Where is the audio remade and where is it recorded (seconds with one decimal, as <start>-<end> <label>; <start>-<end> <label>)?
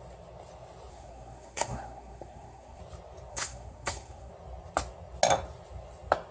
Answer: 0.0-0.9 recorded; 0.9-2.8 remade; 2.8-3.3 recorded; 3.3-4.3 remade; 4.3-6.3 recorded